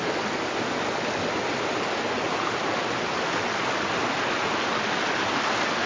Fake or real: real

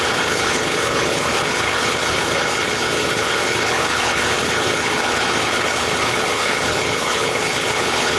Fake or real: fake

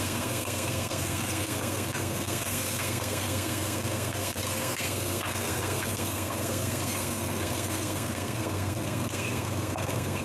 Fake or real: fake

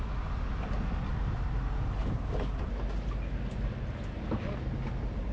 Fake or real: real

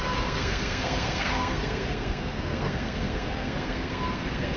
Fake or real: fake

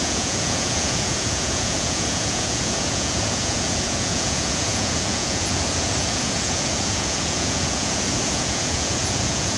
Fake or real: fake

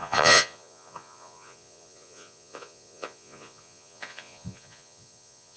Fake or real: fake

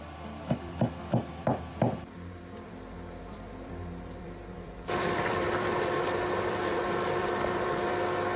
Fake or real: fake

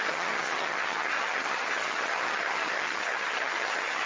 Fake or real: fake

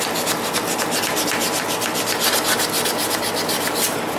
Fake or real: real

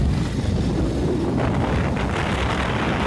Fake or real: real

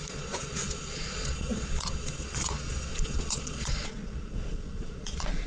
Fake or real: fake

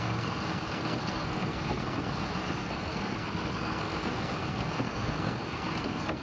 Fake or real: fake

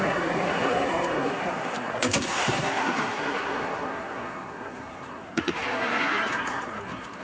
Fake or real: fake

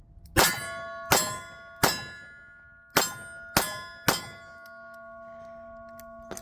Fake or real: real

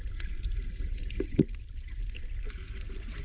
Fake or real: real